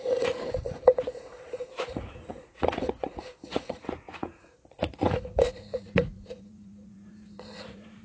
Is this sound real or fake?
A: fake